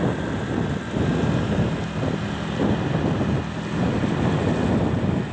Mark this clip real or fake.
real